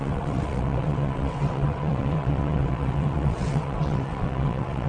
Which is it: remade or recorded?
remade